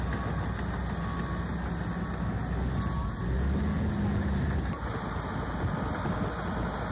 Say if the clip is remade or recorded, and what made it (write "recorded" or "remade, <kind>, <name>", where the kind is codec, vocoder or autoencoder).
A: recorded